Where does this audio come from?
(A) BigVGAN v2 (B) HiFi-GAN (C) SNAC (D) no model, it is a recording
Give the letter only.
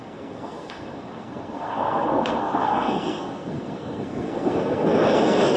C